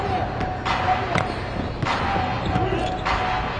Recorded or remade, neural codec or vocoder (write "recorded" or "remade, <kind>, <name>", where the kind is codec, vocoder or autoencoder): recorded